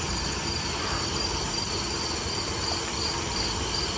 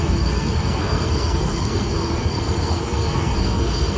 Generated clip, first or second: second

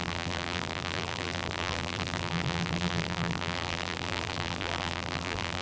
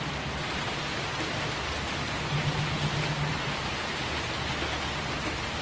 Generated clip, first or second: first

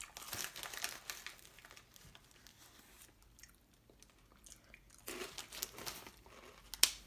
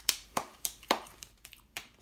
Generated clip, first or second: second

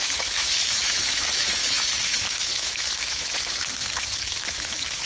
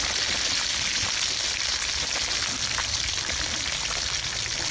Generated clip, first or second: first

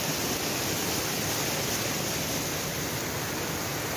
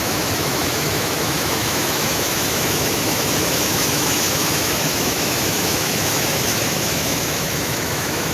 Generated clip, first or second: second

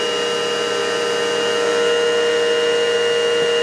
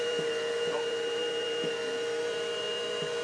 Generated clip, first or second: second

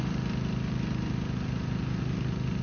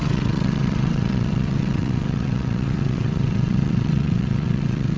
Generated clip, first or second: second